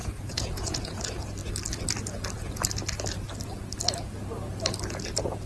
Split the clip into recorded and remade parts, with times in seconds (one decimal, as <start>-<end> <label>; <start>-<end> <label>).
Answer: 0.0-1.0 remade; 1.0-5.5 recorded